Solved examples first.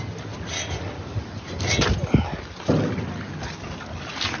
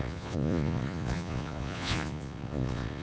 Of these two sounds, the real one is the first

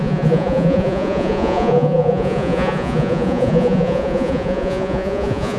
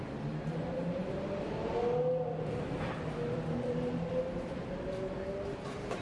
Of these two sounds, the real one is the second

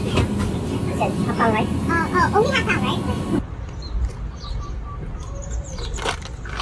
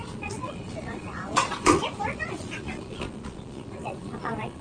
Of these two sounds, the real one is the first